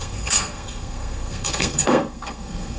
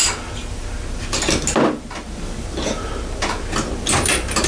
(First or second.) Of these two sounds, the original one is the second